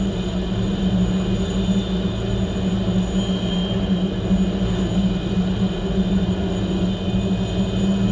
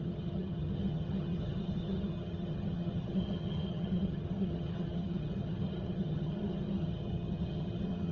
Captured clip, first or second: first